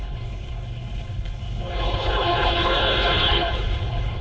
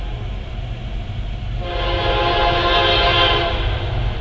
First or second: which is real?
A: second